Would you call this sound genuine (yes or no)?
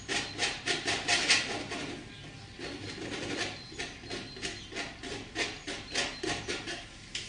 yes